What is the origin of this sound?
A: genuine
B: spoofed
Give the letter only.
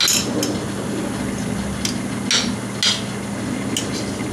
A